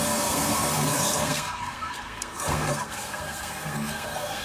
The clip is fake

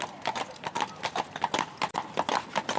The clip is real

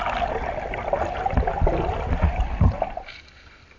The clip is real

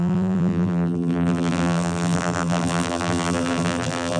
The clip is fake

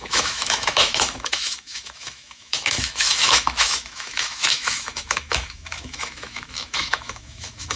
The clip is fake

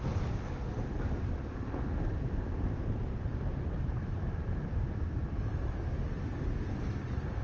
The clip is real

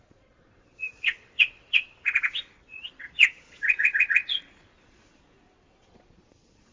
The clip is fake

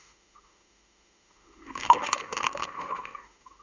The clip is fake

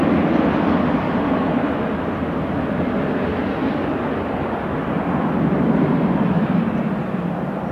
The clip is real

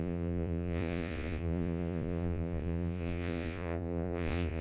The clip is fake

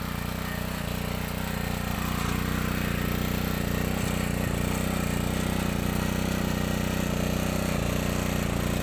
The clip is real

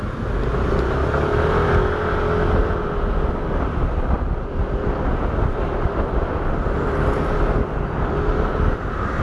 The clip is real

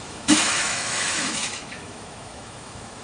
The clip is fake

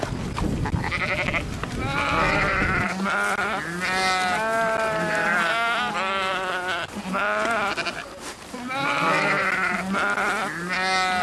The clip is real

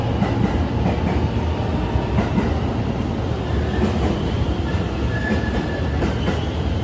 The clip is real